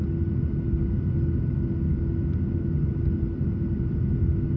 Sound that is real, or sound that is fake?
real